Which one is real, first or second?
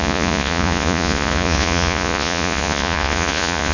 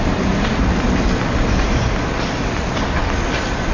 second